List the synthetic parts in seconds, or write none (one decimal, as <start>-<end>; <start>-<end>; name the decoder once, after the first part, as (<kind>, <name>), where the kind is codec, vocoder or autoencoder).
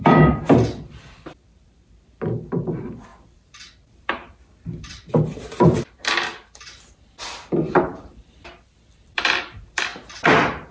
0.0-9.9 (vocoder, BigVGAN v2)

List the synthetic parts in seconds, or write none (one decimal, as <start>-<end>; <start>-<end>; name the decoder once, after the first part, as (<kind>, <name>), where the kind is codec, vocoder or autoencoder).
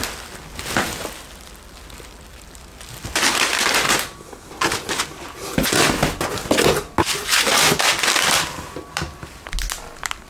none